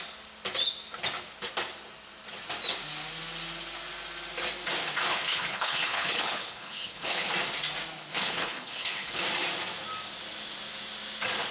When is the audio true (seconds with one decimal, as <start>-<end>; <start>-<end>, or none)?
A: 0.0-5.1; 7.3-8.1; 9.2-11.5